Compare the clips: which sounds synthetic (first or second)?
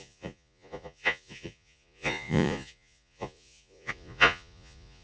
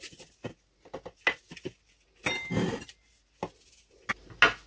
first